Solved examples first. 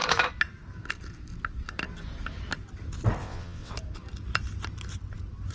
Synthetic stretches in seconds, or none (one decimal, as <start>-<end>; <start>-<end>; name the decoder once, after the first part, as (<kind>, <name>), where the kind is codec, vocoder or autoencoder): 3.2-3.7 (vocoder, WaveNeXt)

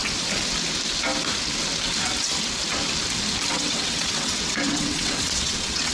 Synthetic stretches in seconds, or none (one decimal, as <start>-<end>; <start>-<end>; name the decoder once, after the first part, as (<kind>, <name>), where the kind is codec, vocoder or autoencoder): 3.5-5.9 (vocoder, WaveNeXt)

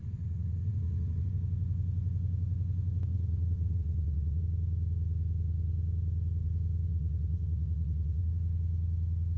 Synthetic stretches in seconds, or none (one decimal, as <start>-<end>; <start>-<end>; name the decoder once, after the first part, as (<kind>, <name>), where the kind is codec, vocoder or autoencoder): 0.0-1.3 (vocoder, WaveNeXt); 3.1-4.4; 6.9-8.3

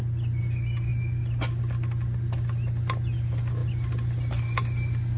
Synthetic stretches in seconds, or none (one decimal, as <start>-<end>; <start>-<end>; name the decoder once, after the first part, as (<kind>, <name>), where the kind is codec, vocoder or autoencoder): none

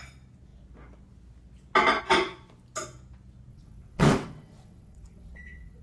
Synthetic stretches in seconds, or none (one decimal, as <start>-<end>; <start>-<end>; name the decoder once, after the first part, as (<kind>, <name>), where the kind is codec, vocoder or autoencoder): 3.5-5.8 (vocoder, WaveNeXt)